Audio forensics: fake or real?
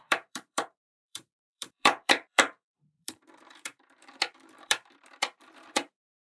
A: fake